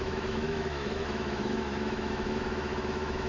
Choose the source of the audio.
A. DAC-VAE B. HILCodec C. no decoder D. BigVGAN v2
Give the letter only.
A